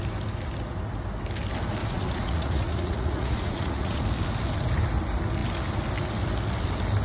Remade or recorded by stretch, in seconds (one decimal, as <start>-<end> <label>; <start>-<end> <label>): 0.0-1.8 recorded; 1.8-4.0 remade; 4.0-7.0 recorded